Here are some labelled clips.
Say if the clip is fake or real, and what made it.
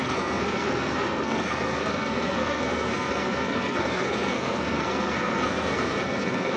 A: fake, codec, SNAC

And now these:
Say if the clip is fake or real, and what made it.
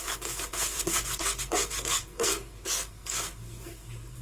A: fake, codec, SNAC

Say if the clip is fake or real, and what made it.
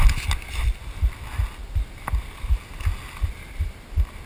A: real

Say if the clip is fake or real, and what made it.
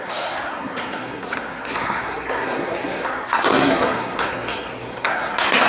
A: fake, codec, SNAC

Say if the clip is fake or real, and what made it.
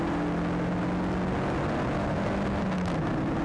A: real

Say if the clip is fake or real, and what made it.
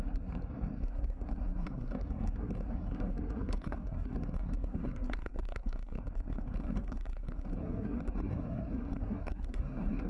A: fake, codec, SNAC